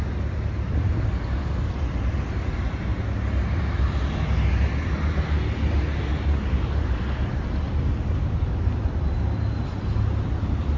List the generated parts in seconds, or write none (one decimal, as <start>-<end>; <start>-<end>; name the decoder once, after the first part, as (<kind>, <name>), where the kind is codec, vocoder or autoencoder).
none